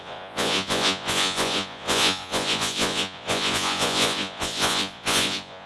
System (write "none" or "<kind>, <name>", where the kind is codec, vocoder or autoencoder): vocoder, Vocos